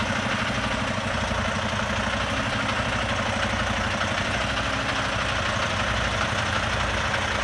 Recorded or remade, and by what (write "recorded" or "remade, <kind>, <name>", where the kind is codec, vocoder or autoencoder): recorded